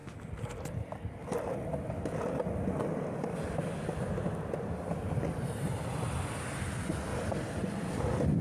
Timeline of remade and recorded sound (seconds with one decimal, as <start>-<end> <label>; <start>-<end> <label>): 0.0-8.4 recorded